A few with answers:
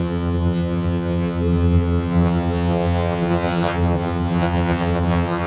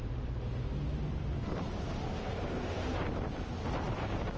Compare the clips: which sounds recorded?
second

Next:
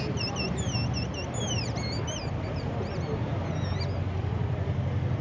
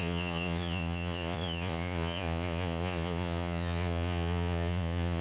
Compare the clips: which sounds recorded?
first